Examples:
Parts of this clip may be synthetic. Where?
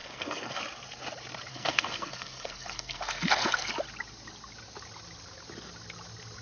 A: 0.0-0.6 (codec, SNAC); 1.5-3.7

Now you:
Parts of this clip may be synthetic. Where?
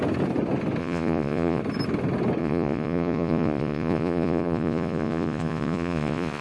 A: 0.8-1.6 (vocoder, Vocos); 2.4-6.4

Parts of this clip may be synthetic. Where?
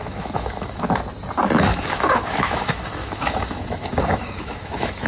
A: 0.0-0.8 (autoencoder, DAC-VAE); 1.7-5.1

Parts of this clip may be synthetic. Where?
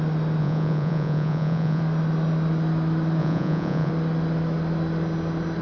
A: 0.4-1.8 (vocoder, Vocos); 3.2-3.9